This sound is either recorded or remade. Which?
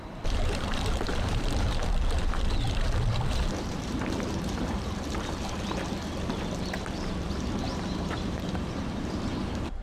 remade